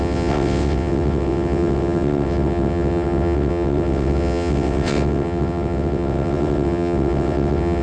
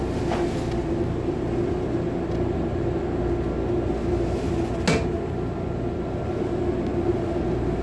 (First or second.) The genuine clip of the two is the second